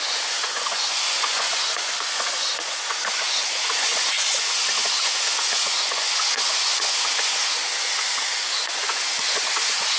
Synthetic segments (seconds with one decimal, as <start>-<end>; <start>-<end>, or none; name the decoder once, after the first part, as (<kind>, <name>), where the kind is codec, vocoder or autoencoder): 0.0-10.0 (vocoder, Vocos)